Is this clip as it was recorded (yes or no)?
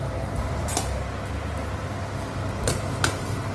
yes